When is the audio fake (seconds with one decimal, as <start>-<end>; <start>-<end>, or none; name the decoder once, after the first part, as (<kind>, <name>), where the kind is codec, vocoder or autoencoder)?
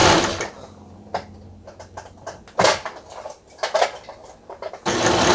none